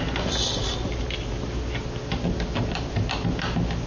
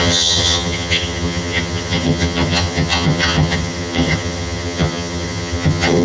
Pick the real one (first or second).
first